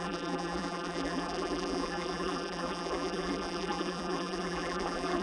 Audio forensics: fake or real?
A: fake